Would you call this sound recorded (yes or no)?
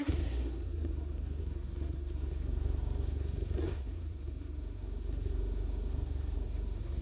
no